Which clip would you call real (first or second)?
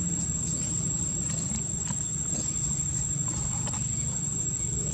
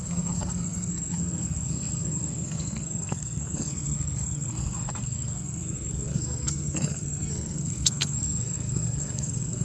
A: first